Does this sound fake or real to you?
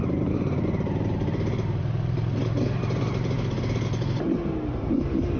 fake